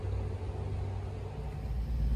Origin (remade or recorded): recorded